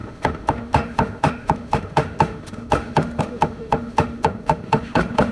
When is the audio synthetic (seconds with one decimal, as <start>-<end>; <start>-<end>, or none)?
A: 0.0-5.3